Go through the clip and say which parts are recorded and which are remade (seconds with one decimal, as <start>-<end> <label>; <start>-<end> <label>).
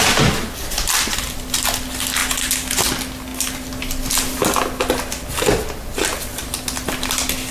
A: 0.0-7.5 recorded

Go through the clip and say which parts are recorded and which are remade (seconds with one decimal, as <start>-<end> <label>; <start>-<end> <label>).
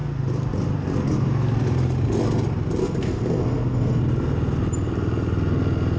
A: 0.0-2.8 recorded; 2.8-4.0 remade; 4.0-6.0 recorded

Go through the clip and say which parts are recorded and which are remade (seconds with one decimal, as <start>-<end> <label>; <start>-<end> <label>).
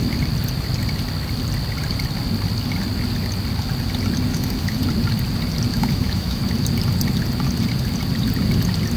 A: 0.0-4.3 recorded; 4.3-4.8 remade; 4.8-5.7 recorded; 5.7-6.4 remade; 6.4-9.0 recorded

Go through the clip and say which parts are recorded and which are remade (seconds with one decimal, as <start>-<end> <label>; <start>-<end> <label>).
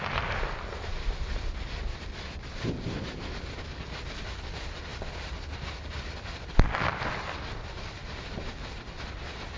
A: 0.0-9.6 recorded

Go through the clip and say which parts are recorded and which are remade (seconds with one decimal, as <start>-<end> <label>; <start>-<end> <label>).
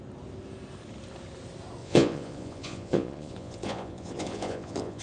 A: 0.0-1.8 recorded; 1.8-5.0 remade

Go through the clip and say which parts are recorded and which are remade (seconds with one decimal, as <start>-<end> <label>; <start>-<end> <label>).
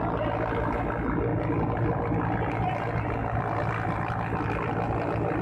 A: 0.0-5.4 recorded